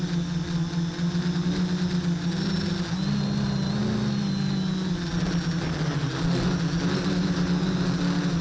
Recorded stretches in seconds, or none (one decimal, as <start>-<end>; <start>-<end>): 0.0-8.4